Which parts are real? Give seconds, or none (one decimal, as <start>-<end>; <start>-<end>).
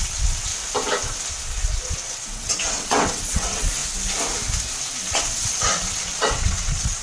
0.5-2.0; 3.8-5.0